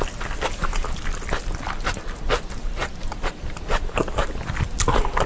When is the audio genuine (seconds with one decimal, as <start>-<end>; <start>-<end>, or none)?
0.0-5.3